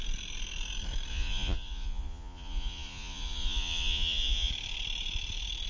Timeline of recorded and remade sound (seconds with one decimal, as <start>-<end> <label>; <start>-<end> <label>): 0.0-1.1 recorded; 1.1-4.5 remade; 4.5-5.7 recorded